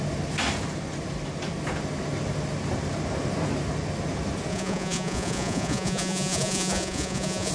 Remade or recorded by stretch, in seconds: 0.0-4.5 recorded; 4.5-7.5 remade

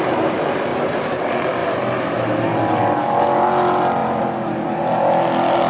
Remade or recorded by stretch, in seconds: 0.0-0.7 recorded; 0.7-1.2 remade; 1.2-5.7 recorded

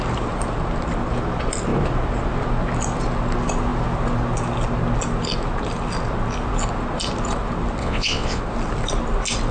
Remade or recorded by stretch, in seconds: 0.0-7.8 recorded; 7.8-8.4 remade; 8.4-9.5 recorded